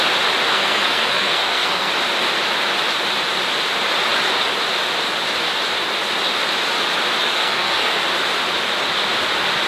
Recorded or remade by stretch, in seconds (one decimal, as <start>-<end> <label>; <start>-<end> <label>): 0.0-0.5 recorded; 0.5-1.9 remade; 1.9-7.2 recorded; 7.2-8.0 remade; 8.0-9.7 recorded